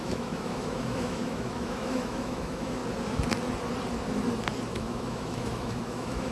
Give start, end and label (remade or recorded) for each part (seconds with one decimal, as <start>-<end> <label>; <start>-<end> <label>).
0.0-2.8 remade; 2.8-4.7 recorded; 4.7-6.3 remade